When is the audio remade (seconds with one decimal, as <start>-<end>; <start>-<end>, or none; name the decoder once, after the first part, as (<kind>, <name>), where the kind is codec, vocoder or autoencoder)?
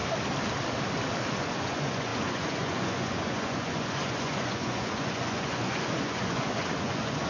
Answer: 1.3-7.3 (vocoder, Vocos)